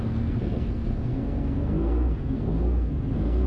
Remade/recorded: remade